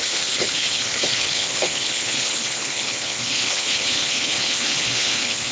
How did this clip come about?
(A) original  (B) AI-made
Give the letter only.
B